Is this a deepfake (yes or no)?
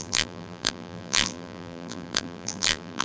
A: yes